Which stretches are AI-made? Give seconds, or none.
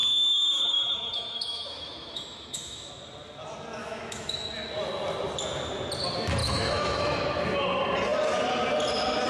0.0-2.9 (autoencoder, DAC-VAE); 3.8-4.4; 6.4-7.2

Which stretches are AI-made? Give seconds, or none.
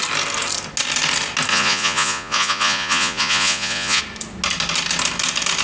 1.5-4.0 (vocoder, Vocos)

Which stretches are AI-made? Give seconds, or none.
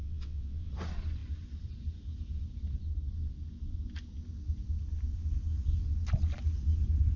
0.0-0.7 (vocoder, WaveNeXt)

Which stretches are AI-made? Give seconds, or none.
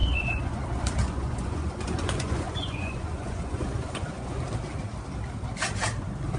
0.0-0.6 (vocoder, Vocos); 1.0-4.4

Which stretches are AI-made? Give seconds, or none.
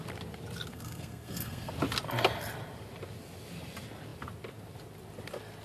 0.7-1.7 (codec, SNAC)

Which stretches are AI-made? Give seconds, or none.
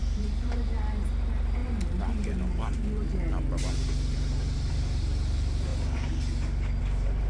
0.0-5.7 (vocoder, BigVGAN v2); 6.8-7.3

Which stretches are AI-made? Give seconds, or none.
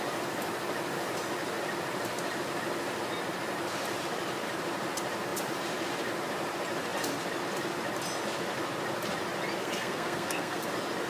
9.6-10.7 (codec, SNAC)